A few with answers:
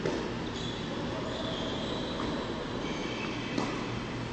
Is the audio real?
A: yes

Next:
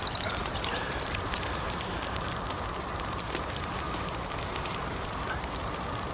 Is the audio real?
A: no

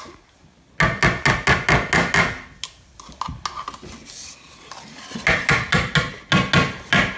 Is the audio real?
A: yes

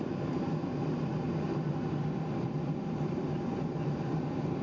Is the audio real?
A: no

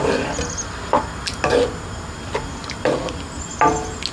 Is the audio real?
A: yes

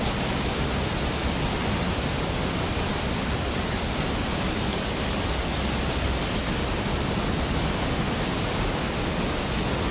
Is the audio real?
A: yes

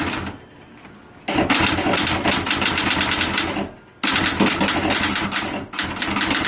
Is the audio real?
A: yes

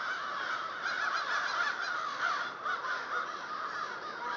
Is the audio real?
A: yes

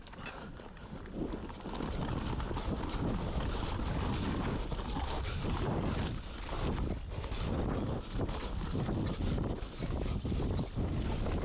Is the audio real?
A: yes